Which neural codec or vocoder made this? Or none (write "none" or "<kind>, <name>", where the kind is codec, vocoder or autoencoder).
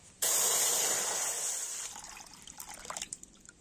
vocoder, BigVGAN v2